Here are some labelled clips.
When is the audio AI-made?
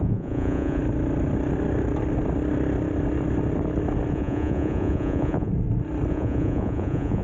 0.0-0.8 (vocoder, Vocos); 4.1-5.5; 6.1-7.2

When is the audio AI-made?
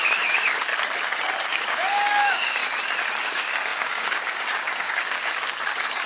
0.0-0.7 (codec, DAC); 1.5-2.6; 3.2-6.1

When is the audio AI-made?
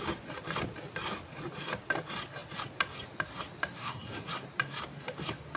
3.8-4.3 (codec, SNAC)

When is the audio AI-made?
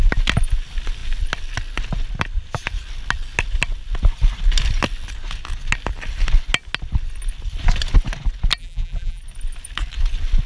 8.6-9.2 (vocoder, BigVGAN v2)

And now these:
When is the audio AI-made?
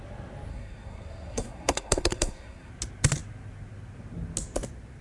0.5-2.7 (codec, SNAC)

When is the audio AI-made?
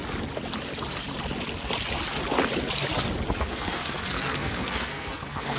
3.4-5.6 (codec, SNAC)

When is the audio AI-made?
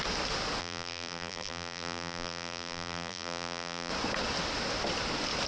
0.6-3.9 (vocoder, BigVGAN v2)